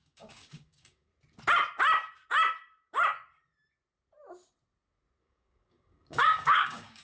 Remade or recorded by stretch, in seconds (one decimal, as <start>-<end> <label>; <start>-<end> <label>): 0.0-1.1 remade; 1.1-5.2 recorded; 5.2-7.0 remade